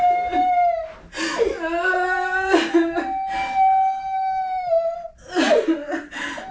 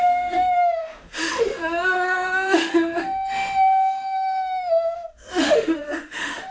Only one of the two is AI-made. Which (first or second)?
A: second